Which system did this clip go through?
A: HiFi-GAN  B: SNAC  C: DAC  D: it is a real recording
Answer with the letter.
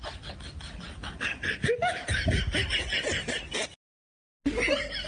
D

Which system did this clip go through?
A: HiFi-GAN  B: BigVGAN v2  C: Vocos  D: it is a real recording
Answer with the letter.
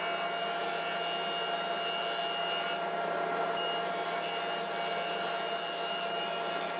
D